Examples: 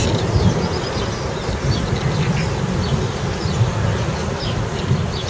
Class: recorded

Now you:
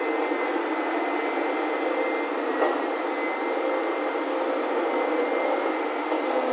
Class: recorded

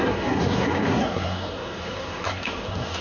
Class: remade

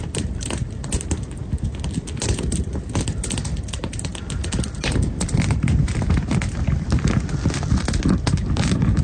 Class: recorded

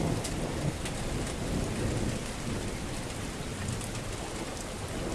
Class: recorded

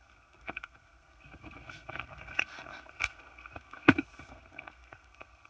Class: remade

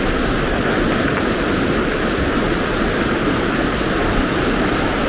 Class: recorded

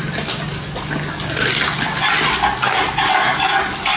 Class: recorded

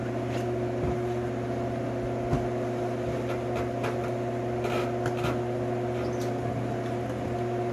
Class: recorded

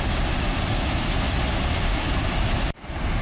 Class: recorded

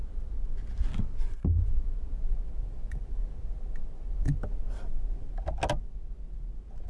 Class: recorded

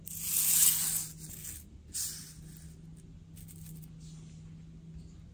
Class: recorded